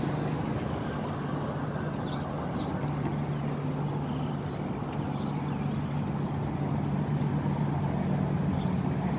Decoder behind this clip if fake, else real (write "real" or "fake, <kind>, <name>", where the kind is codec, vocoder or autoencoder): real